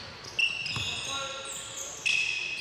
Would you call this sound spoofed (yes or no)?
no